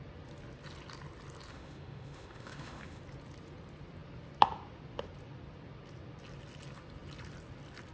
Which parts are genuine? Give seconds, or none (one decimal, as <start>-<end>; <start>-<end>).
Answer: 0.0-1.5; 3.0-7.9